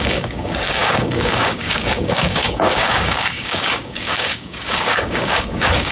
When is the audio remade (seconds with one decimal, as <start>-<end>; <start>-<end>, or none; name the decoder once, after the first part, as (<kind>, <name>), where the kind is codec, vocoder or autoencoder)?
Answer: 0.0-5.9 (codec, DAC)